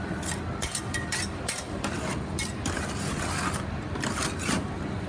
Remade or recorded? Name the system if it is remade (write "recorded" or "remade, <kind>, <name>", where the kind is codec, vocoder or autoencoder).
recorded